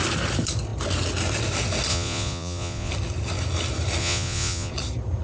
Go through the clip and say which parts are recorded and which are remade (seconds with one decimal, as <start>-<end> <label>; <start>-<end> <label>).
0.0-1.9 recorded; 1.9-2.9 remade; 2.9-4.0 recorded; 4.0-4.7 remade; 4.7-5.2 recorded